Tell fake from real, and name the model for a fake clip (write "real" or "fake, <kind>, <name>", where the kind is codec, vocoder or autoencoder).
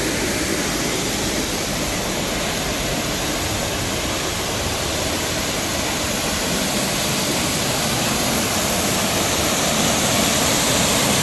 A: real